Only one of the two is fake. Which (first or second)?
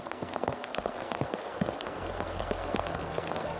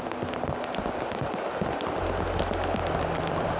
first